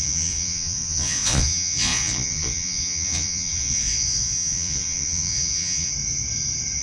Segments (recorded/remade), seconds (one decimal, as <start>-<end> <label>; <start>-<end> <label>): 0.0-5.9 remade; 5.9-6.8 recorded